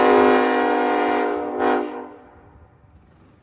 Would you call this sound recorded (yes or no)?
yes